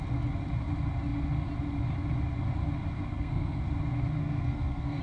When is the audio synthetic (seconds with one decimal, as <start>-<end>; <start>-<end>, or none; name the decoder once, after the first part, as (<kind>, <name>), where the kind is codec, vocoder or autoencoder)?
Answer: 3.1-3.6 (codec, SNAC); 4.2-5.0